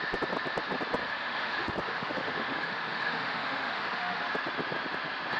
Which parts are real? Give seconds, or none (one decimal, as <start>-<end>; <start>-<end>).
0.0-1.0; 4.2-5.4